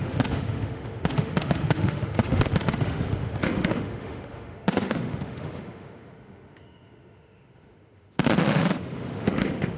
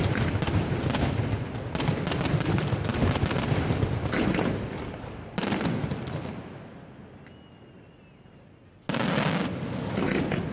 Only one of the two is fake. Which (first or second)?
first